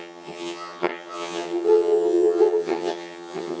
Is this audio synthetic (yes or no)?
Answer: yes